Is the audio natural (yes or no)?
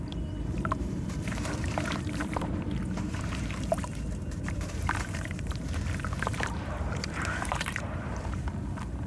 no